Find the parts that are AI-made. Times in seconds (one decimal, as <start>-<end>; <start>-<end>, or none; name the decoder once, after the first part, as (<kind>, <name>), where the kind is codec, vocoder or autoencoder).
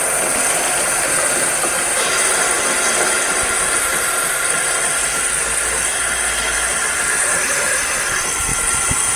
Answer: 8.5-9.2 (vocoder, BigVGAN v2)